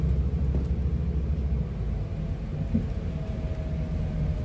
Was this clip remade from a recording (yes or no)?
no